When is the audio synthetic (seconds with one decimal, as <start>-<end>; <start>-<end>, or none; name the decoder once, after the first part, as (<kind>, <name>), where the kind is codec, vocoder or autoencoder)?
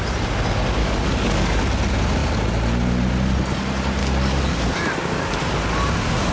0.8-1.6 (codec, DAC); 4.0-5.6